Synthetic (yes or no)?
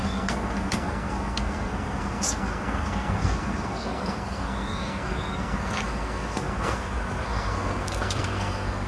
yes